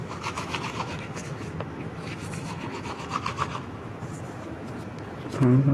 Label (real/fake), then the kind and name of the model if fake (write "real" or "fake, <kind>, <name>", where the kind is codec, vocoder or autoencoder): fake, autoencoder, DAC-VAE